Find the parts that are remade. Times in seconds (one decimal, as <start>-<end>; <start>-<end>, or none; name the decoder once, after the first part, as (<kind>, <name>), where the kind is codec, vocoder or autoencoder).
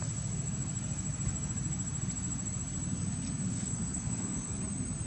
3.4-4.6 (codec, SNAC)